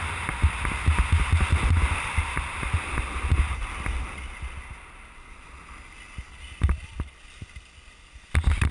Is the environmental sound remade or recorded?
recorded